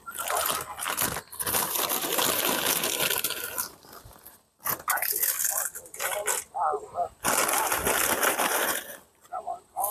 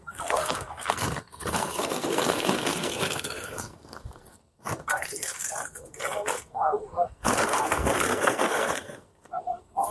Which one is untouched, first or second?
first